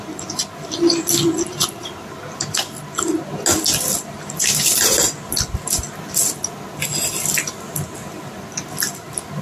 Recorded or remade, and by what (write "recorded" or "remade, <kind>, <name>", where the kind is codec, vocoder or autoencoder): recorded